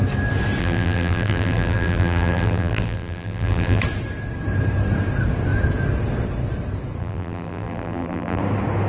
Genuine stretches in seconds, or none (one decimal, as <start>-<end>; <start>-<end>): 0.0-0.6; 3.8-7.0; 8.4-8.9